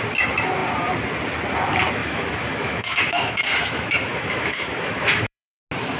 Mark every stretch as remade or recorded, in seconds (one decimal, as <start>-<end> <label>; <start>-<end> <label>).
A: 0.0-2.0 recorded; 2.0-5.6 remade; 5.6-6.0 recorded